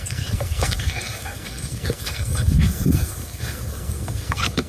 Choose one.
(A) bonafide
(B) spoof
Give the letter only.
B